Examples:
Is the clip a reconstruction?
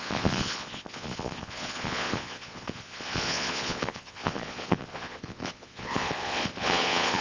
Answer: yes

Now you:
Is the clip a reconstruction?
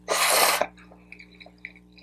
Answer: no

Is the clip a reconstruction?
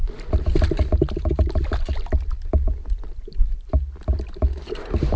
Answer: no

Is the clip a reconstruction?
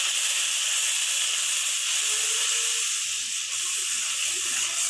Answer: no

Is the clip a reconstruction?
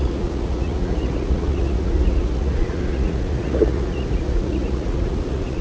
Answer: yes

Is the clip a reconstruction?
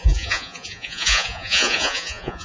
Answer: yes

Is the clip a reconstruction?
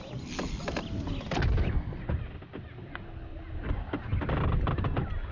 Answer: no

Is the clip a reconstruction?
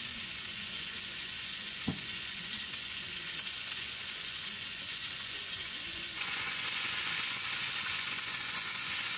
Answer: yes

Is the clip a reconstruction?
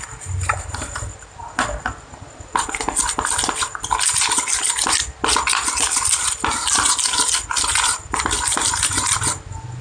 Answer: no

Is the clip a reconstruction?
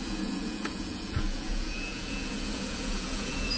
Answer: yes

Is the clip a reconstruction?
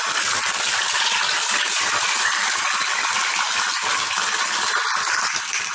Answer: no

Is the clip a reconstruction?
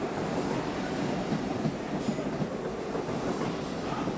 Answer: no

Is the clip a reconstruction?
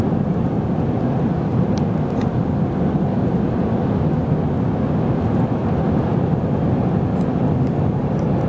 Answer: no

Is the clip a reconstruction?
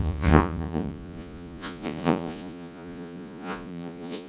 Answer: yes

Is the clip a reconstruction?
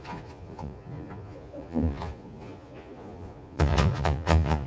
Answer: yes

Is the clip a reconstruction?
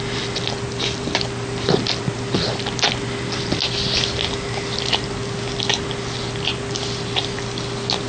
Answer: no